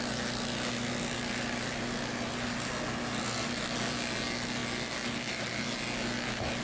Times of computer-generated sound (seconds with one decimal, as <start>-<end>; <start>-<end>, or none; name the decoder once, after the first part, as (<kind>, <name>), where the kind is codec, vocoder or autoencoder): none